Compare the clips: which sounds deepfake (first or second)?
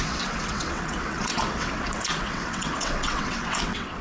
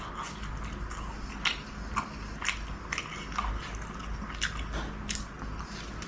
first